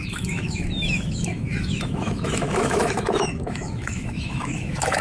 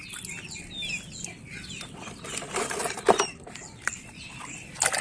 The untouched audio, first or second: second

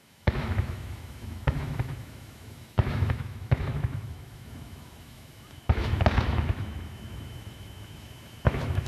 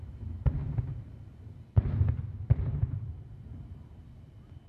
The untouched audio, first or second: second